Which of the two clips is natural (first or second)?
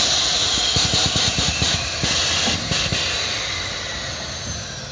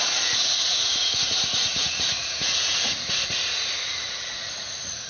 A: first